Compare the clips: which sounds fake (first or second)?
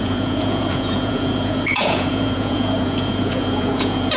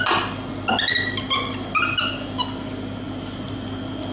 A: first